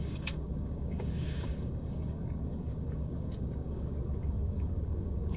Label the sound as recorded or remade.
remade